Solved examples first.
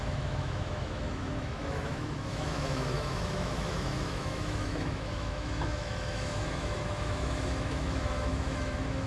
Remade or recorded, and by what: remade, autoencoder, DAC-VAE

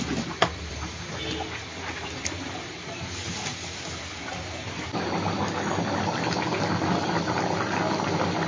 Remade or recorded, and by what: recorded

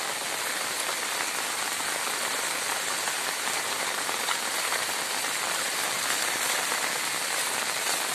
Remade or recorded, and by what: recorded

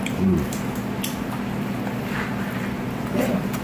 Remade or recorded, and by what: recorded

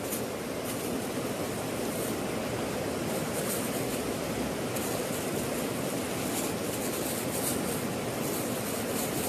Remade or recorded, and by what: recorded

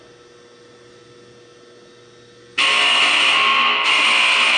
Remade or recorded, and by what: recorded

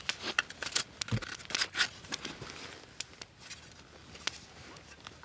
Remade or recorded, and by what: recorded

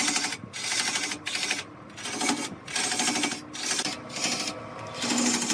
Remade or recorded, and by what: recorded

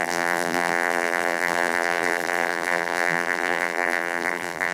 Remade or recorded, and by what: remade, vocoder, BigVGAN v2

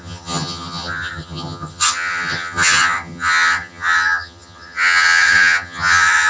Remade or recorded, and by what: remade, vocoder, HiFi-GAN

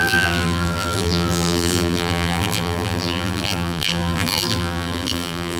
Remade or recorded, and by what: remade, vocoder, BigVGAN v2